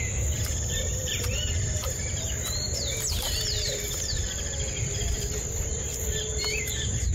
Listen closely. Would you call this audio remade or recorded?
remade